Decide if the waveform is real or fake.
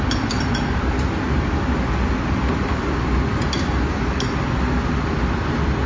real